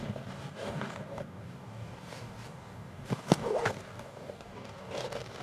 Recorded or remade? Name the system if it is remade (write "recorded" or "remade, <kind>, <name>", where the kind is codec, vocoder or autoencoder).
remade, codec, DAC